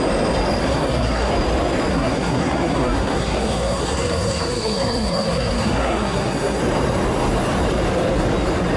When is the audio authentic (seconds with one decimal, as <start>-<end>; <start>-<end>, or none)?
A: 0.0-0.6; 1.3-1.9; 6.6-8.8